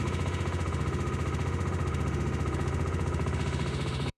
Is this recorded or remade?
remade